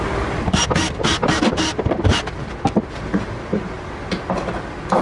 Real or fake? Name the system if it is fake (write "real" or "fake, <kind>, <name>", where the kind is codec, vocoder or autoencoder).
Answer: fake, vocoder, BigVGAN v2